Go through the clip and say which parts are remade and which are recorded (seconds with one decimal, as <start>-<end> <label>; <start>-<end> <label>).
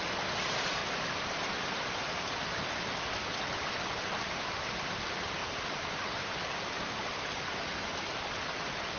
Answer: 0.0-0.8 recorded; 0.8-1.6 remade; 1.6-5.4 recorded; 5.4-6.8 remade; 6.8-9.0 recorded